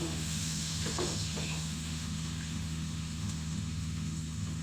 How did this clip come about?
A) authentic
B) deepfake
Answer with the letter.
B